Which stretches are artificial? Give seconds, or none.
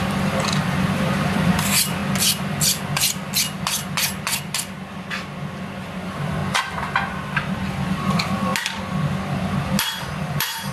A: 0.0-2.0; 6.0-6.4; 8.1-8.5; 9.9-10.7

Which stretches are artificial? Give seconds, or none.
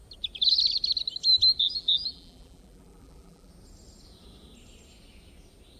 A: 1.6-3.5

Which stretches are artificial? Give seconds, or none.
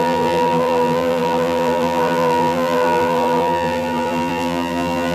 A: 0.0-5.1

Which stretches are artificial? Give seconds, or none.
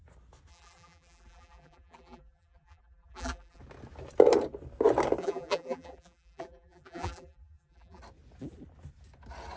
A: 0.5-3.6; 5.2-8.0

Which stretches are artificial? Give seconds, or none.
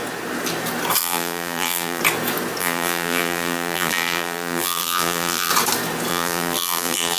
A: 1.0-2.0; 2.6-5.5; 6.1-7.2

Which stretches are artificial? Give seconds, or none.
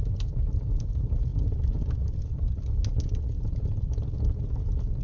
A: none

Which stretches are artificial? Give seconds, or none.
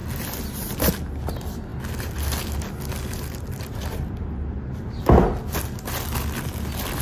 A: none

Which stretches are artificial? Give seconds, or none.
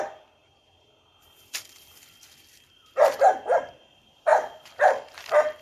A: 0.4-3.6; 4.3-5.6